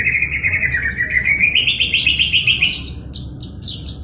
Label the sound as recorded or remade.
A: recorded